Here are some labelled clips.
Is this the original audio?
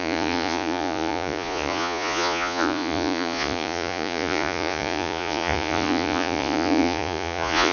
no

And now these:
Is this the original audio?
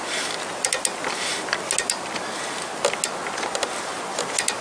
yes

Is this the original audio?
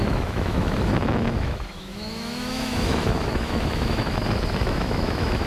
no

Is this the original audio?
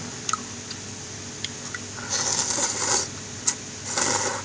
yes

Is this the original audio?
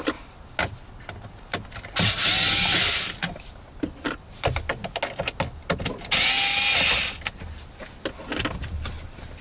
yes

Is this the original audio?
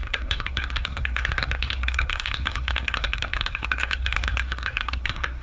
no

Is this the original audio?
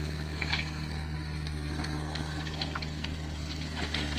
no